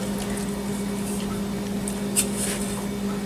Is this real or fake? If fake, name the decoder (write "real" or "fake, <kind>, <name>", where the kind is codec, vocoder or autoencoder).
real